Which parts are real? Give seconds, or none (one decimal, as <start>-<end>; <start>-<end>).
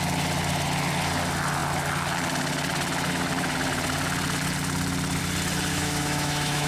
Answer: 0.0-5.7